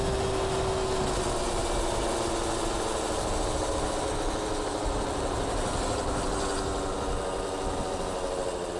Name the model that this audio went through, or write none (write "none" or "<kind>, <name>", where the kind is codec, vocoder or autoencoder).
none